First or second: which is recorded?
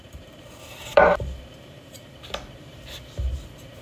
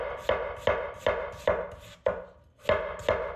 second